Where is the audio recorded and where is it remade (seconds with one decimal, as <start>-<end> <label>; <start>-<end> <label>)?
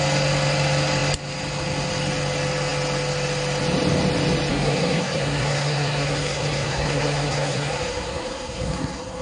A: 0.0-4.5 recorded; 4.5-9.2 remade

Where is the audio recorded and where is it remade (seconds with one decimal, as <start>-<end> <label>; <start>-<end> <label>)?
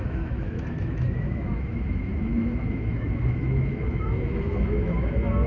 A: 0.0-5.5 remade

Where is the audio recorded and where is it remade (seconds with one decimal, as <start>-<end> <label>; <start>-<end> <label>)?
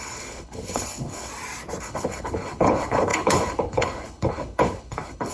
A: 0.0-1.3 remade; 1.3-1.8 recorded; 1.8-5.3 remade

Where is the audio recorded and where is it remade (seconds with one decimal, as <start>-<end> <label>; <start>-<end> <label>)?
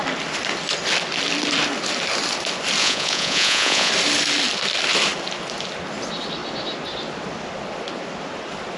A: 0.0-2.8 recorded; 2.8-3.9 remade; 3.9-8.8 recorded